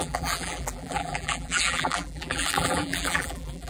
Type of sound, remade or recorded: remade